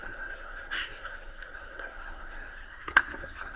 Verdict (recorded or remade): remade